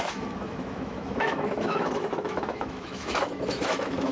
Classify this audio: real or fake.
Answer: fake